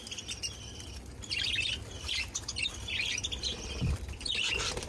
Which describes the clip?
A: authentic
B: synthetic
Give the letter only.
A